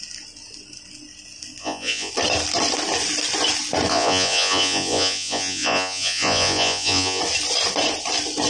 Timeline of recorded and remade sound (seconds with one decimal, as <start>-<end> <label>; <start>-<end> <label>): 0.0-1.6 recorded; 1.6-2.1 remade; 2.1-3.9 recorded; 3.9-7.2 remade; 7.2-8.5 recorded